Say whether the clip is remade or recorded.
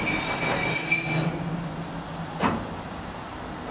recorded